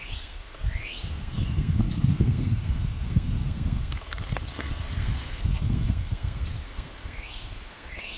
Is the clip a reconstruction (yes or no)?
yes